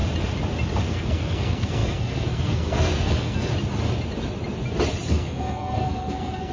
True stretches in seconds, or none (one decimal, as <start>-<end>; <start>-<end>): 0.0-0.8; 3.5-5.1